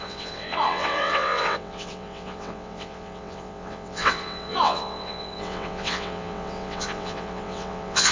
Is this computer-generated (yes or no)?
yes